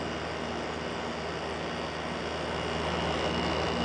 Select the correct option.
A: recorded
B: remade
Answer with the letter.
A